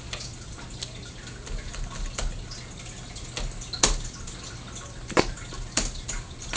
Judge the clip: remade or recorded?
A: recorded